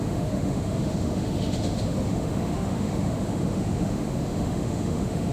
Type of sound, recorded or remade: remade